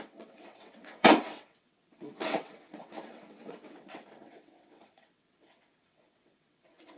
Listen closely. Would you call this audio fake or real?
fake